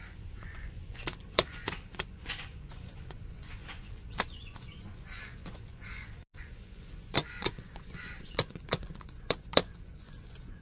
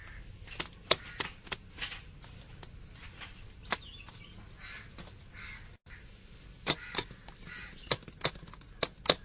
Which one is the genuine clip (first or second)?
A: second